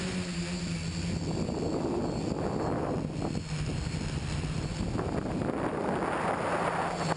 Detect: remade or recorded recorded